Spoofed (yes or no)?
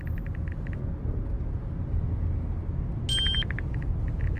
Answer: no